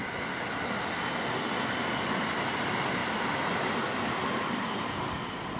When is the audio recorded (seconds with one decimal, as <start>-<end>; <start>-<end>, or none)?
0.0-5.6